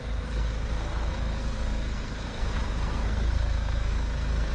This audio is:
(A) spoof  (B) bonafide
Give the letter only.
A